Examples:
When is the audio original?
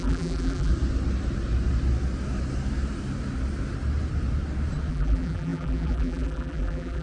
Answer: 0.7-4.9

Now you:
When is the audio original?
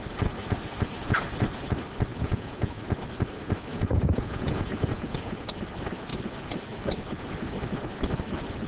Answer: 0.0-2.1; 2.8-3.7; 5.3-8.7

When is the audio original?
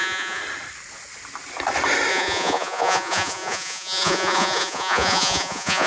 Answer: 0.4-2.1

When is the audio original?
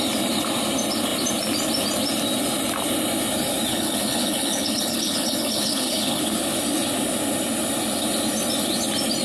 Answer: 0.0-3.7; 6.2-9.2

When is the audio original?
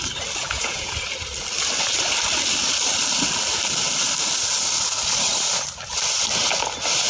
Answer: 0.0-0.4; 0.9-7.1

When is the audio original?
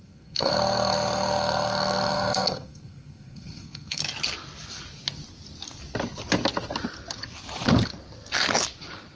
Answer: 4.0-9.2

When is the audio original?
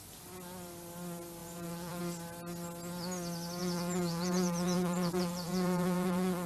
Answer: 0.0-1.4; 2.0-3.6